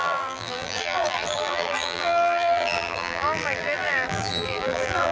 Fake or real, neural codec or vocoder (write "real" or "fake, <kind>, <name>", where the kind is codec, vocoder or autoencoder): fake, vocoder, BigVGAN v2